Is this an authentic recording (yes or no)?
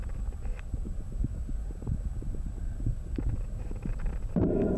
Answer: no